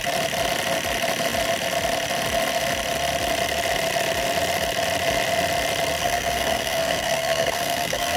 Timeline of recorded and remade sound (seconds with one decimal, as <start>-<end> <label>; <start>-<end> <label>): 0.0-6.0 recorded; 6.0-8.2 remade